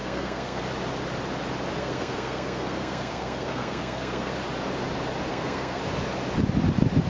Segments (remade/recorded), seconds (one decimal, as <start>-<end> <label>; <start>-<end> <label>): 0.0-0.6 remade; 0.6-1.8 recorded; 1.8-4.3 remade; 4.3-5.3 recorded; 5.3-5.8 remade; 5.8-7.1 recorded